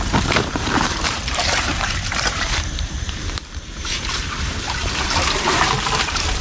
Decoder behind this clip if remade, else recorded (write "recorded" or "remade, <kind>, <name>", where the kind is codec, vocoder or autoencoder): remade, vocoder, BigVGAN v2